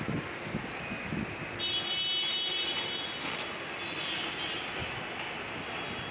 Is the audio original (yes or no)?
yes